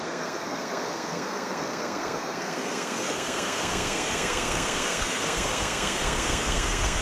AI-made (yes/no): yes